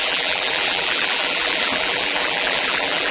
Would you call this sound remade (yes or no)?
yes